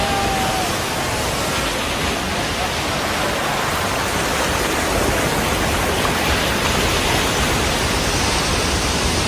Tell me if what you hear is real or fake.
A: real